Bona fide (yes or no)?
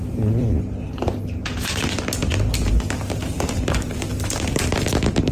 yes